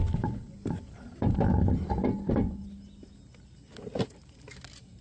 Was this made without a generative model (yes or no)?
yes